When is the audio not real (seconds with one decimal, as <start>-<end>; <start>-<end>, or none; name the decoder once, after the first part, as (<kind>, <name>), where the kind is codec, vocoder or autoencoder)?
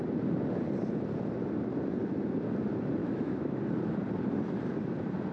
3.0-3.6 (autoencoder, DAC-VAE)